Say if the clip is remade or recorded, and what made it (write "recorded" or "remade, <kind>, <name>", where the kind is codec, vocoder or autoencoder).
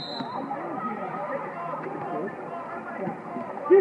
remade, vocoder, BigVGAN v2